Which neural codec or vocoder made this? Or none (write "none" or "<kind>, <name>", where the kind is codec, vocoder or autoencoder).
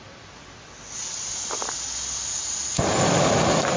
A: none